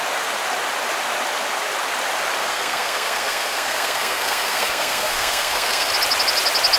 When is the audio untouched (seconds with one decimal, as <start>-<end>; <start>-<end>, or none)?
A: 0.0-2.4; 5.9-6.8